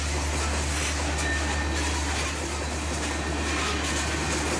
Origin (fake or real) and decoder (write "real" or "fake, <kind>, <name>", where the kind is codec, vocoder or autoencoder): real